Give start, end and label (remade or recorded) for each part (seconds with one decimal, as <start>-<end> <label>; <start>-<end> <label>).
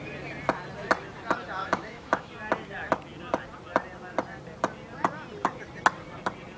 0.0-1.6 recorded; 1.6-2.3 remade; 2.3-6.6 recorded